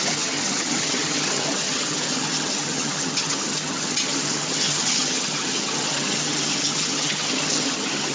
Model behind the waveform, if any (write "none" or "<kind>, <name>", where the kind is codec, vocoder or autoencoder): vocoder, HiFi-GAN